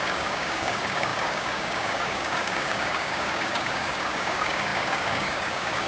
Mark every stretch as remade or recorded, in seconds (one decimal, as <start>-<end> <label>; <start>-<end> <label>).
0.0-5.9 remade